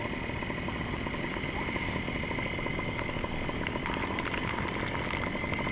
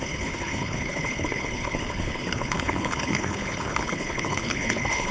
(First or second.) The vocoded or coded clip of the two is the second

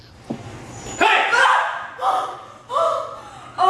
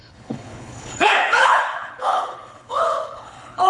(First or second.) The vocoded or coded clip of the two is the second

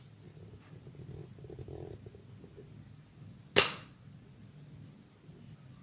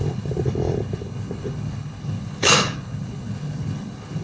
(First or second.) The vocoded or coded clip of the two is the second